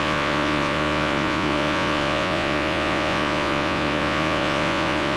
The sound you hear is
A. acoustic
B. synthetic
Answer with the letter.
B